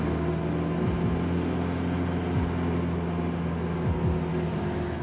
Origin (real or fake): real